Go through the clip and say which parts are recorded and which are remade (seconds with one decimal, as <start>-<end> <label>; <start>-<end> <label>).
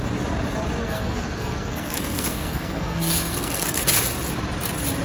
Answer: 0.0-0.8 recorded; 0.8-3.8 remade; 3.8-5.0 recorded